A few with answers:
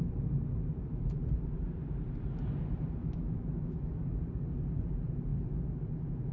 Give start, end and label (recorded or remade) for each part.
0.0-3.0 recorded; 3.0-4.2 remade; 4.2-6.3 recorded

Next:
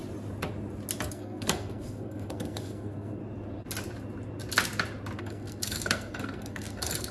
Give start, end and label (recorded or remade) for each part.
0.0-1.1 recorded; 1.1-3.2 remade; 3.2-5.2 recorded; 5.2-7.1 remade